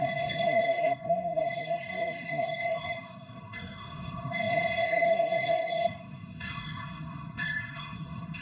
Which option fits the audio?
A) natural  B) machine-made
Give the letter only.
B